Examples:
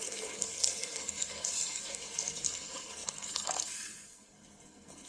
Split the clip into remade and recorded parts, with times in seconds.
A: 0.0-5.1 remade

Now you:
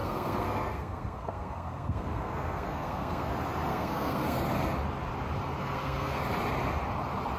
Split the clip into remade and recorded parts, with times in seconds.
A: 0.0-3.3 remade; 3.3-3.7 recorded; 3.7-4.4 remade; 4.4-5.6 recorded; 5.6-6.2 remade; 6.2-7.4 recorded

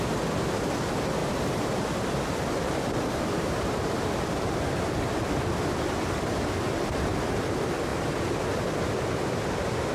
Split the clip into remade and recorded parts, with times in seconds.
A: 0.0-1.2 recorded; 1.2-5.0 remade; 5.0-9.9 recorded

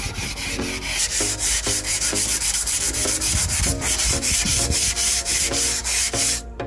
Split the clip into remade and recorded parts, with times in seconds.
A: 0.0-6.7 remade

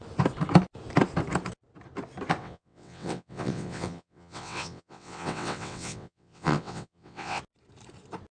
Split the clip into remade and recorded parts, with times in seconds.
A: 0.0-2.4 recorded; 2.4-7.4 remade; 7.4-8.3 recorded

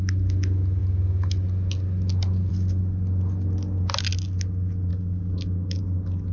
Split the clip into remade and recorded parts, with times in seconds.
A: 0.0-4.9 recorded; 4.9-5.8 remade; 5.8-6.3 recorded

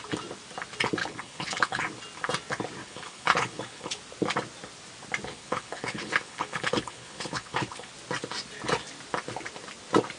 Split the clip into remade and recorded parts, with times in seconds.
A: 0.0-1.0 recorded; 1.0-1.8 remade; 1.8-2.8 recorded; 2.8-4.0 remade; 4.0-5.3 recorded; 5.3-7.9 remade; 7.9-10.2 recorded

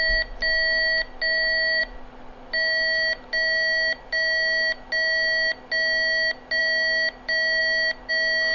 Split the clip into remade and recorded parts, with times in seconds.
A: 0.0-8.5 recorded